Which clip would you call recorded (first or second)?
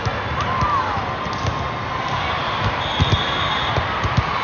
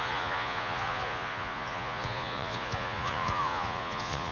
first